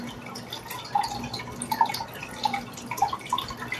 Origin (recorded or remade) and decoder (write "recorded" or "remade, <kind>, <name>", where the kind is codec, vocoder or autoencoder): recorded